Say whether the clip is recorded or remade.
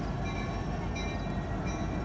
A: recorded